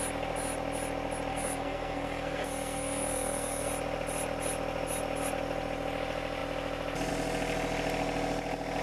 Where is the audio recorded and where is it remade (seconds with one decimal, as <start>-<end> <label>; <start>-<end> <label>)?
0.0-1.3 recorded; 1.3-3.7 remade; 3.7-8.8 recorded